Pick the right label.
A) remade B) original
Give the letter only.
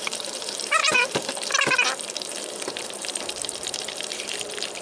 A